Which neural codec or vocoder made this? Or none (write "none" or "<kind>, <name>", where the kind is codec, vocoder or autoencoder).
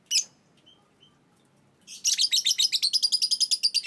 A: none